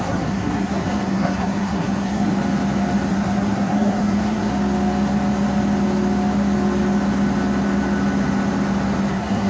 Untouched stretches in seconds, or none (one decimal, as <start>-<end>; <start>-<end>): 2.3-3.1; 4.5-9.1